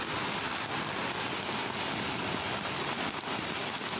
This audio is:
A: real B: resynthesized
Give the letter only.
A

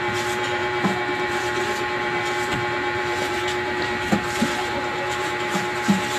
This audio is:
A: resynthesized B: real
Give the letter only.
A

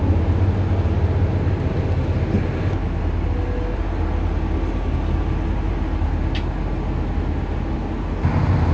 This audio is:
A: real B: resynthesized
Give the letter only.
A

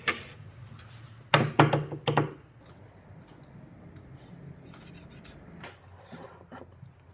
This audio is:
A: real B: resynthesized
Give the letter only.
A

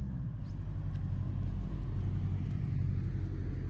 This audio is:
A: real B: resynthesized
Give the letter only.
A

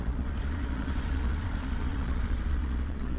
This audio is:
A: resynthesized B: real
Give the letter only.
A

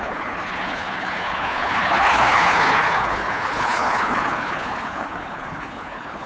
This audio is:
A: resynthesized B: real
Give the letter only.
A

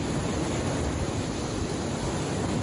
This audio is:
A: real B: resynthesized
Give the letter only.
A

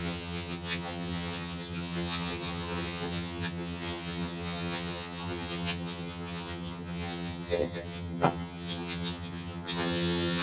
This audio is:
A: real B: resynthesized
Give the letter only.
B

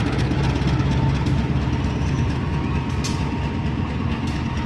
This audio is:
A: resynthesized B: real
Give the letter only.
B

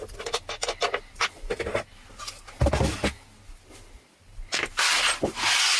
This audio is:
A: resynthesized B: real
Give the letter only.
B